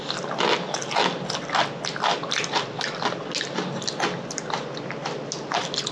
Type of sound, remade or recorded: recorded